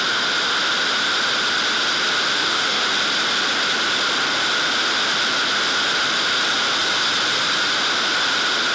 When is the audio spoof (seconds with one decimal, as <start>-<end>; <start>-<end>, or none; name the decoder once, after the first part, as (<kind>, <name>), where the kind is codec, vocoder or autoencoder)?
2.3-2.8 (autoencoder, DAC-VAE)